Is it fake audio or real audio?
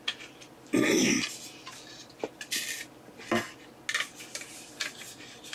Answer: real